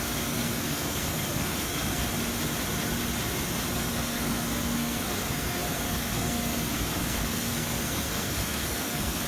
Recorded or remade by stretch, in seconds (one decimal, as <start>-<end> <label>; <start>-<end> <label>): 0.0-2.0 remade; 2.0-3.7 recorded; 3.7-9.3 remade